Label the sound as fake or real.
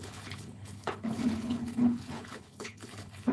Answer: fake